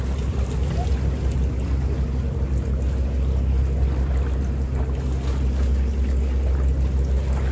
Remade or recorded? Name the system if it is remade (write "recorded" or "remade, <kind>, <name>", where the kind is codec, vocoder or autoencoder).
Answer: recorded